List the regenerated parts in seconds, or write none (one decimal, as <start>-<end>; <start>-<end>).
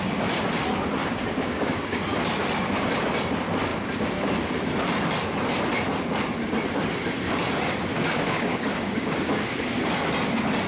1.0-2.0; 7.9-9.9